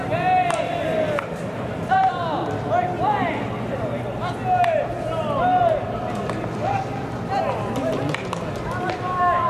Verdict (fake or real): real